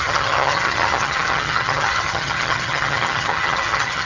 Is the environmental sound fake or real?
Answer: fake